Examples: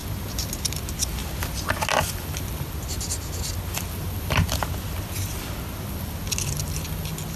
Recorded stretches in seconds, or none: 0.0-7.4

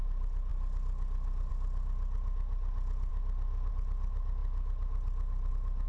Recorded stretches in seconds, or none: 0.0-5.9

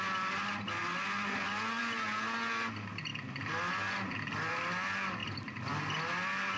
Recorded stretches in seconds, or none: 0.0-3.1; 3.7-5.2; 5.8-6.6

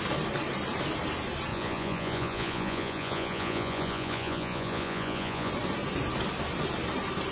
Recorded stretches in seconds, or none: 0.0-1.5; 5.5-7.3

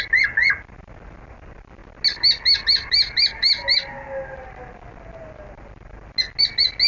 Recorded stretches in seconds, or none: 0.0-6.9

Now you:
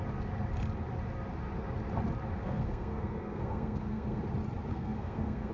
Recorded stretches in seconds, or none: 0.0-2.4; 4.2-4.7